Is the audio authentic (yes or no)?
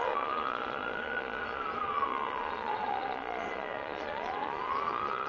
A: no